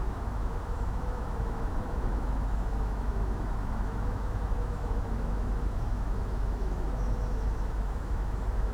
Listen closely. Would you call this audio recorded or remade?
remade